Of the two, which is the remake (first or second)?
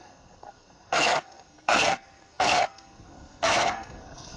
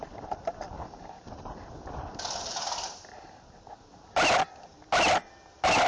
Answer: first